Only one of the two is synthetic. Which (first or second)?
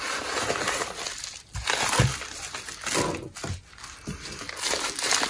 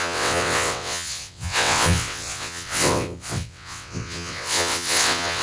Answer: second